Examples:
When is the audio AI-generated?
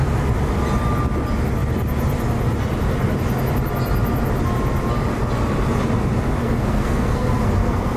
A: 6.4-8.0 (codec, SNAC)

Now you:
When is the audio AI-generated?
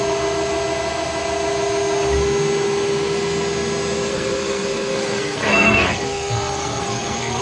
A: 4.1-7.4 (codec, SNAC)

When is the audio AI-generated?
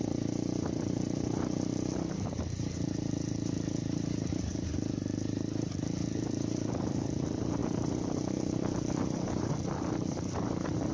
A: 0.0-10.9 (vocoder, BigVGAN v2)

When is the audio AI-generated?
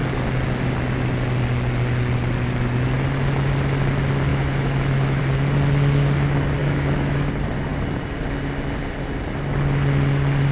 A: 4.3-5.2 (autoencoder, DAC-VAE); 6.6-7.3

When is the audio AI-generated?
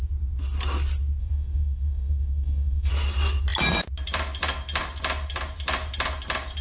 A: 1.2-2.9 (codec, DAC)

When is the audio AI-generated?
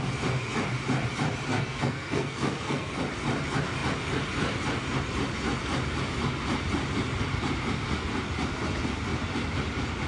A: 1.5-3.0 (codec, SNAC)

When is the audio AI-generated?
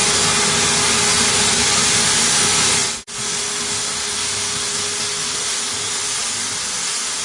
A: none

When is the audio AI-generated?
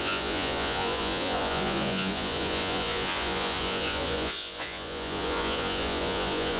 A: 0.0-6.6 (vocoder, Vocos)